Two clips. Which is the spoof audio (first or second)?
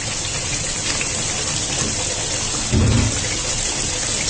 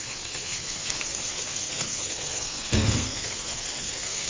second